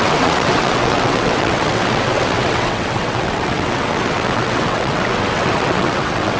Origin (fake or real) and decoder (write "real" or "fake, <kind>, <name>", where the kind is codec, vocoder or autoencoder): fake, vocoder, WaveNeXt